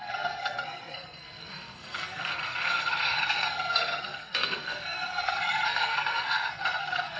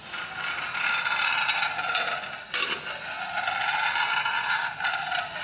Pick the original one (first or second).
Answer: second